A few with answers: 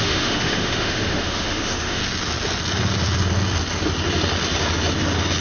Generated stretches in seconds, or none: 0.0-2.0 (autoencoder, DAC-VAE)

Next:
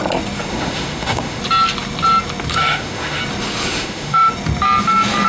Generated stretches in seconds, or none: 0.5-1.4 (autoencoder, DAC-VAE); 2.6-3.2; 3.7-4.3

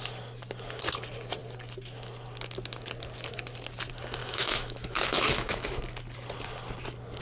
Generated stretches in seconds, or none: 4.2-5.8 (autoencoder, DAC-VAE)

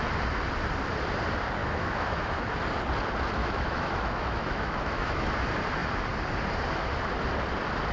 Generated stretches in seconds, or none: 1.6-2.3 (autoencoder, DAC-VAE); 3.4-5.3

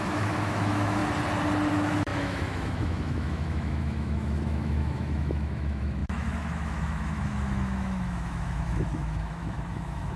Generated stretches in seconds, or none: 0.0-1.0 (autoencoder, DAC-VAE); 1.7-10.2

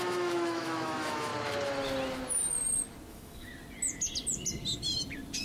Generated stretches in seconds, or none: 0.0-1.3 (autoencoder, DAC-VAE); 3.1-3.5

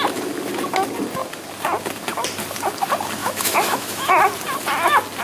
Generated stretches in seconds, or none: 3.2-4.2 (autoencoder, DAC-VAE)